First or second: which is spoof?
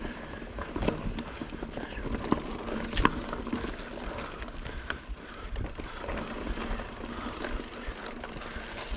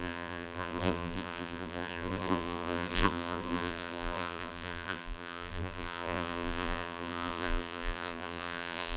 second